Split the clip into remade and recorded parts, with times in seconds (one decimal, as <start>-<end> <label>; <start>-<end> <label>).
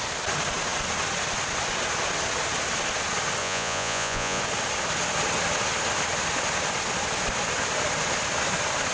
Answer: 0.0-3.4 recorded; 3.4-4.4 remade; 4.4-8.9 recorded